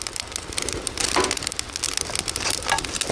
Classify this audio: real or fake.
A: real